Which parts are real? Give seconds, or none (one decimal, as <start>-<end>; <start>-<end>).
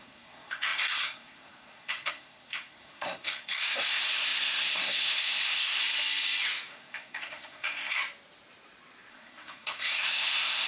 5.8-6.7; 8.0-9.1